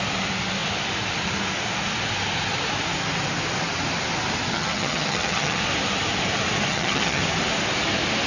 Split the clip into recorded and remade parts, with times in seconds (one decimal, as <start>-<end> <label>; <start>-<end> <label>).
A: 0.0-4.5 recorded; 4.5-5.6 remade; 5.6-6.7 recorded; 6.7-7.2 remade; 7.2-8.3 recorded